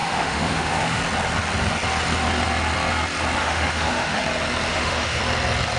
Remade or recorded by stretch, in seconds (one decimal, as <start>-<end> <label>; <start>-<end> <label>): 0.0-1.0 remade; 1.0-3.4 recorded; 3.4-4.2 remade; 4.2-4.7 recorded; 4.7-5.2 remade; 5.2-5.8 recorded